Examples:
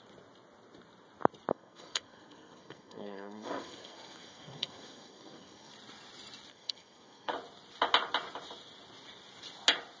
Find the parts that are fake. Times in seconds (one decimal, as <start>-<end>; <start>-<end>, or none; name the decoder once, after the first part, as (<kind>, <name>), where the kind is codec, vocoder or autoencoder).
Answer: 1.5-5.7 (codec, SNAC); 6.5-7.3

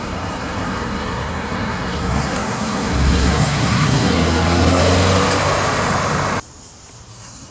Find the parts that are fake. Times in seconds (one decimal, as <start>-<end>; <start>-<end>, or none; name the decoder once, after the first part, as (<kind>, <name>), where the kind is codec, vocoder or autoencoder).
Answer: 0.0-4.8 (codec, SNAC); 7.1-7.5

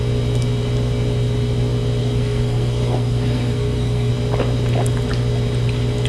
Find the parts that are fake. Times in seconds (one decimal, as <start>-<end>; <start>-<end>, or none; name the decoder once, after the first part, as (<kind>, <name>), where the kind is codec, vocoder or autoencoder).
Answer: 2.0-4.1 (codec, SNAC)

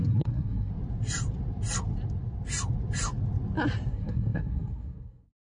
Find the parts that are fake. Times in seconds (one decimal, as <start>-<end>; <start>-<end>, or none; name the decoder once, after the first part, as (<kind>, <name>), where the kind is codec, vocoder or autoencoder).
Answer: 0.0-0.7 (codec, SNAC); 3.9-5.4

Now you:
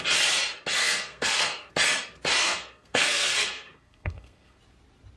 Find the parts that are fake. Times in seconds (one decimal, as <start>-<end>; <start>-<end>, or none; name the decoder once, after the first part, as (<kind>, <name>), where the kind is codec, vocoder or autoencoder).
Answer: 0.8-1.7 (codec, SNAC); 2.4-4.6

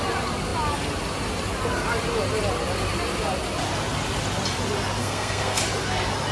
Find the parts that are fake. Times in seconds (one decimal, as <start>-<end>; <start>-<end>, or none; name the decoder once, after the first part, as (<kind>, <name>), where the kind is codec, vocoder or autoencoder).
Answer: 5.0-5.6 (codec, SNAC)

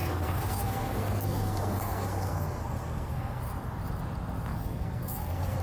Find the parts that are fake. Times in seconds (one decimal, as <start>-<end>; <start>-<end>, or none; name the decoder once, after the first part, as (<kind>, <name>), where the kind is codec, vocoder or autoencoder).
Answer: 0.0-3.4 (codec, SNAC); 4.5-5.6

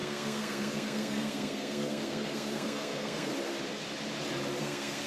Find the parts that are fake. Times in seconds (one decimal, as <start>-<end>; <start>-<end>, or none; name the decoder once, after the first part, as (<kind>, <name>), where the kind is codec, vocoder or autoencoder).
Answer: 0.0-3.3 (codec, SNAC); 4.6-5.1